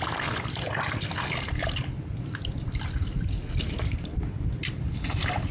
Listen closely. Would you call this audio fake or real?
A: real